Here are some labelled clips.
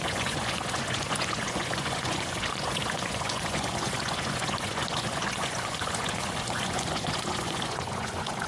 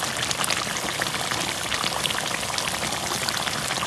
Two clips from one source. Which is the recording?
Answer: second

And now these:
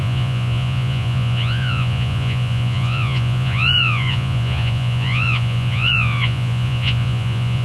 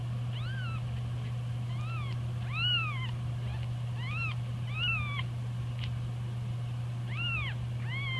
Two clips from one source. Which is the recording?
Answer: second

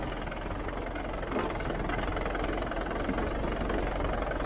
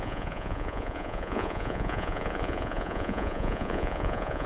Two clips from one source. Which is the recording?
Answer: first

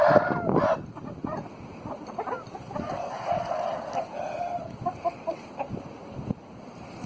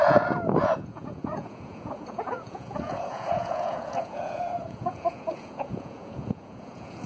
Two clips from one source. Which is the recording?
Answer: first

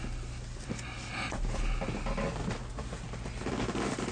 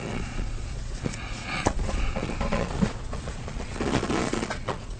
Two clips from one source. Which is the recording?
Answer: first